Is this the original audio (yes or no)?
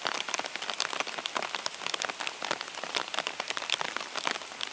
yes